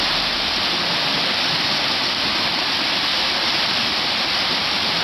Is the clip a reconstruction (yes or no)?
no